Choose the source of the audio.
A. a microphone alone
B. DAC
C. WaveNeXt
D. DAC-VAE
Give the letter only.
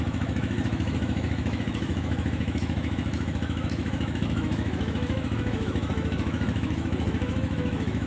D